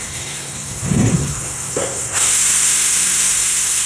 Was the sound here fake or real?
fake